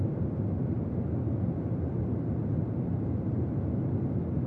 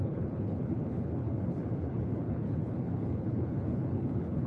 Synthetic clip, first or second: second